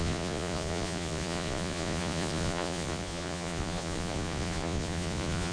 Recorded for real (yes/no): no